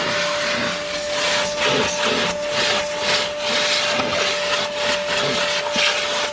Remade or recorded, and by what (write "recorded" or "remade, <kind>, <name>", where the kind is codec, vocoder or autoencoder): recorded